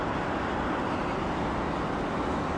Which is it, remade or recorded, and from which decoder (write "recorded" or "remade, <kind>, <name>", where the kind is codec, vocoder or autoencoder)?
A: recorded